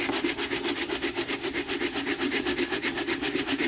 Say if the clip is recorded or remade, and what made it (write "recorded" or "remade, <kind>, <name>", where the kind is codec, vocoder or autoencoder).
recorded